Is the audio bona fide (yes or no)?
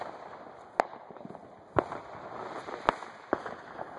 yes